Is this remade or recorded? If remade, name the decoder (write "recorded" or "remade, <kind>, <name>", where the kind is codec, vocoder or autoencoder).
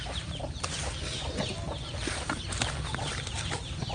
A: recorded